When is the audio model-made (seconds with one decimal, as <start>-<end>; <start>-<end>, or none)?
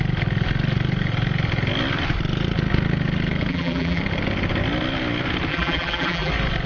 3.5-4.0; 5.5-6.3